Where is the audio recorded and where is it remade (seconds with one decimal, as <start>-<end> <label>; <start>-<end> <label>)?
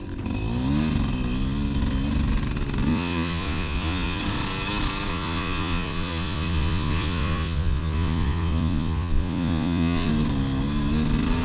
0.0-2.9 recorded; 2.9-4.2 remade; 4.2-5.1 recorded; 5.1-10.1 remade; 10.1-11.4 recorded